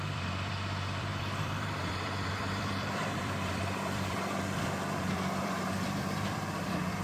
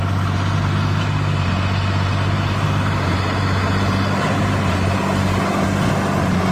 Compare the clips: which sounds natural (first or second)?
second